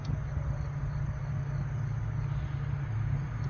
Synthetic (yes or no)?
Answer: no